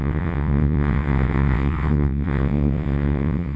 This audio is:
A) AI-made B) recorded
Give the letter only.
A